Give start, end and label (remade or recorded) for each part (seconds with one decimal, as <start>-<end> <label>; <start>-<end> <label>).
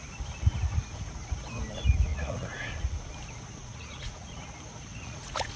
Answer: 0.0-2.1 recorded; 2.1-3.1 remade; 3.1-3.6 recorded; 3.6-4.4 remade; 4.4-4.9 recorded; 4.9-5.6 remade